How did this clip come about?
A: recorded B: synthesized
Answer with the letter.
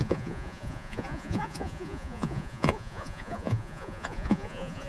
B